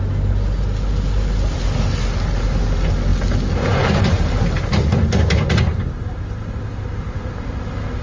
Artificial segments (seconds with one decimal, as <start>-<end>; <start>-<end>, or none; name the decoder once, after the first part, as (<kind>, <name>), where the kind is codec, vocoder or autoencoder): none